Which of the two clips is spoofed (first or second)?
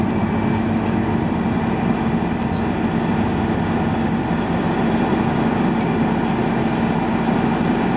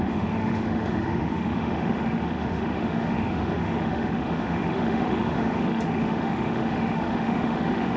second